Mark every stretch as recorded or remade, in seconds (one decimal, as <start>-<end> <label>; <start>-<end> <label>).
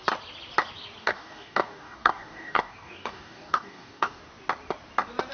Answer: 0.0-1.0 recorded; 1.0-4.2 remade; 4.2-5.3 recorded